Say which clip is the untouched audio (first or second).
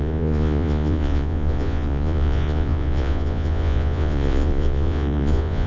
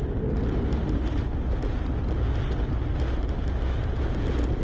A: second